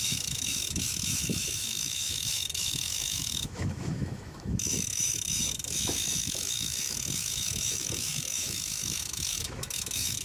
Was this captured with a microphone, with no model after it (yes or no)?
no